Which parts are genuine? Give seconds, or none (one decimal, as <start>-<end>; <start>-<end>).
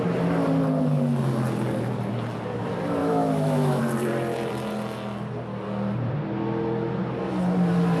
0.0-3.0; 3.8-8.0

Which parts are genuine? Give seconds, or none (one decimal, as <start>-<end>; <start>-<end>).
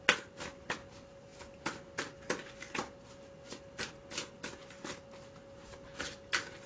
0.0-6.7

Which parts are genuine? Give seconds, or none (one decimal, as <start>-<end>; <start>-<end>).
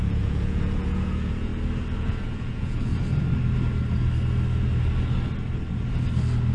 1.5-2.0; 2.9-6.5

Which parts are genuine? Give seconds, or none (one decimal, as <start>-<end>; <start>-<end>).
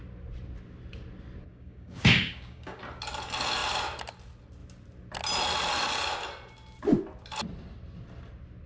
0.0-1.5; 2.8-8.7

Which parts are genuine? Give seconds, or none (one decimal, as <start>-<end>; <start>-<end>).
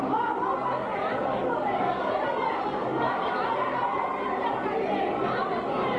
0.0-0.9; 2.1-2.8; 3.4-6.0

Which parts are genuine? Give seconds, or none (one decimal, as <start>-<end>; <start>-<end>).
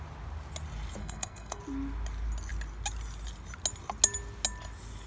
0.0-1.0; 1.6-5.1